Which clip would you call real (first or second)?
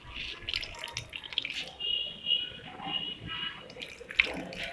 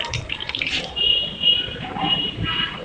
first